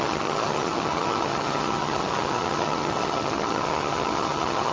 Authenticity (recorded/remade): remade